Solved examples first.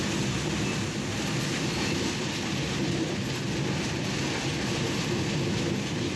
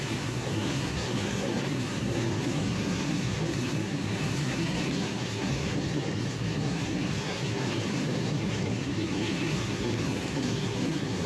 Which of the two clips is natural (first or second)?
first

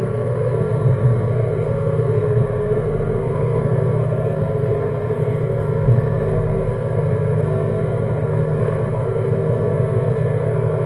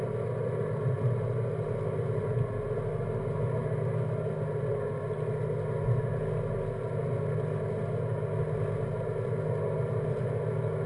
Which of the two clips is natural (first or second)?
second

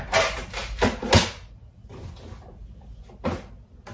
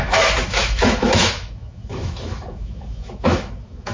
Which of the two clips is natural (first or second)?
first